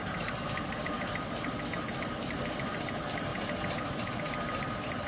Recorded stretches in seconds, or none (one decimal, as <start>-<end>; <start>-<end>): 0.0-2.2; 3.3-4.1